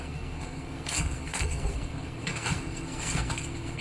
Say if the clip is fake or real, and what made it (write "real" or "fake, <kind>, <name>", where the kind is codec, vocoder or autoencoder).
fake, codec, SNAC